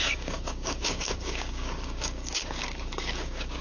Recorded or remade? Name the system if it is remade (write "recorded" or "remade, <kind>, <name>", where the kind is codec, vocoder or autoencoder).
remade, codec, DAC